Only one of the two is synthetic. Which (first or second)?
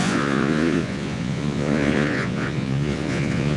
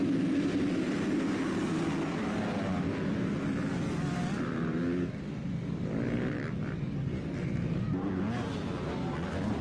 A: first